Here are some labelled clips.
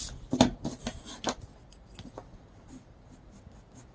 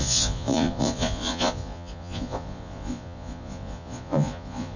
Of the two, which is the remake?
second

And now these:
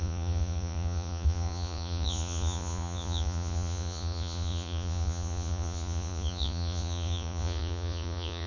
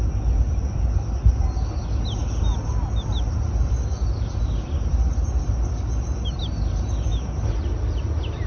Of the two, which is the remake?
first